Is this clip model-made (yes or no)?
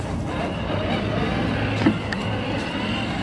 no